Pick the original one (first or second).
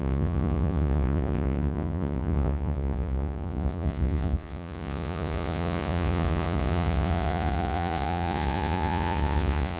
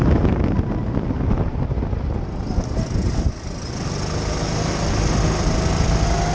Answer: second